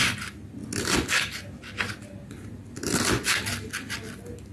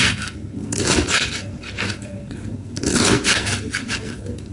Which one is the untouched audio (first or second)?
first